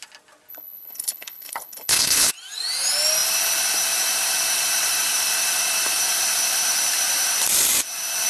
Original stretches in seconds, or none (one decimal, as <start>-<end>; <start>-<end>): 0.0-0.5; 2.3-8.3